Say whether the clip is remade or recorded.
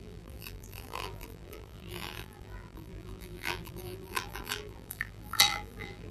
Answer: remade